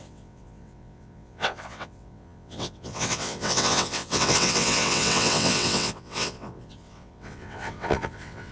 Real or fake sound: fake